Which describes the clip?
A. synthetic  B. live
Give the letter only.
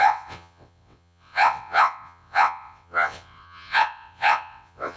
A